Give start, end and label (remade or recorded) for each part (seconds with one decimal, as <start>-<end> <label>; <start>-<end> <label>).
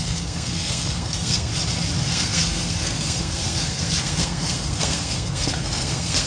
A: 0.0-1.5 remade; 1.5-2.0 recorded; 2.0-6.3 remade